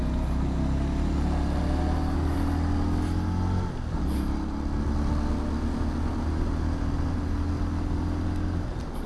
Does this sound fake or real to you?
real